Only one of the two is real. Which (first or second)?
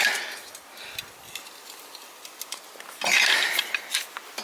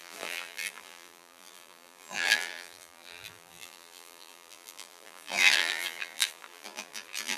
first